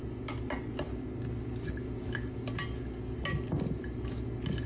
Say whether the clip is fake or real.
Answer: real